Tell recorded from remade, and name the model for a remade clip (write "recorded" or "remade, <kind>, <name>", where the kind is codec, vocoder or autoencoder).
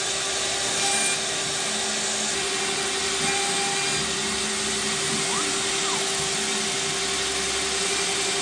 recorded